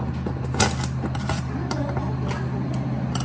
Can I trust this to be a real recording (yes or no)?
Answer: yes